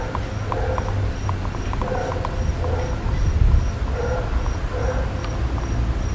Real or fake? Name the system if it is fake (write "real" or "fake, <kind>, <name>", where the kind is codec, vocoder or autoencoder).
real